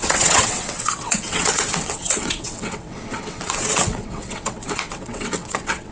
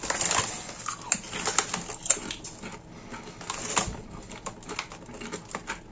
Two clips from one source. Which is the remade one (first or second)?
first